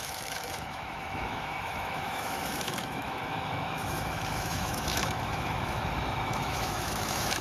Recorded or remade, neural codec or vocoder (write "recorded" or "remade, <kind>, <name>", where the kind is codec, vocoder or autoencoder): remade, autoencoder, DAC-VAE